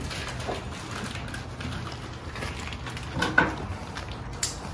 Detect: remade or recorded recorded